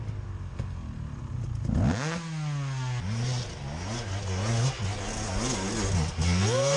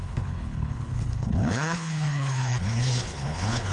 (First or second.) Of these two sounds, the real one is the first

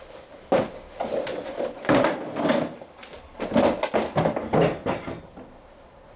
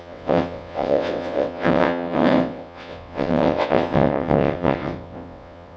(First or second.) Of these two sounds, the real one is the first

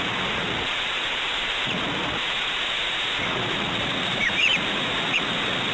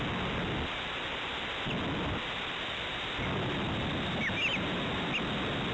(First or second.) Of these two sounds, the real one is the second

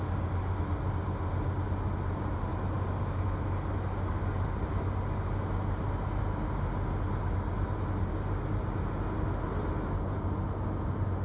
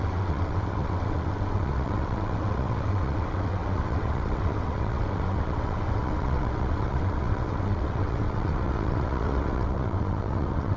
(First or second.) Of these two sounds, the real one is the first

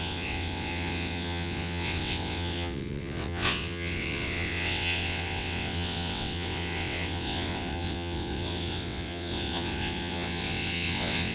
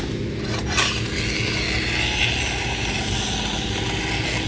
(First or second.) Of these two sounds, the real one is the second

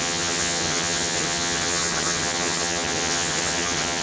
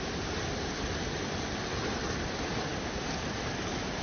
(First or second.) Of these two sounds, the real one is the second